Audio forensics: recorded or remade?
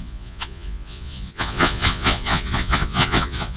remade